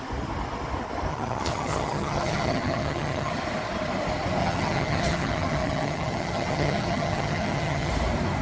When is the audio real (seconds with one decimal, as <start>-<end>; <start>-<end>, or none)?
0.0-1.1; 3.3-4.4; 7.9-8.4